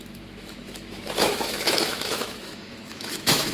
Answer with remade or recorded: remade